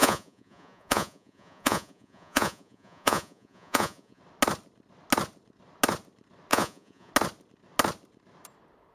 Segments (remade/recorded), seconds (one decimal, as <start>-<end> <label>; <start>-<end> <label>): 0.0-4.2 remade; 4.2-6.5 recorded; 6.5-7.1 remade; 7.1-8.9 recorded